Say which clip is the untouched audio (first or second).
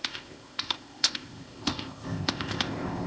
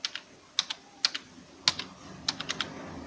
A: second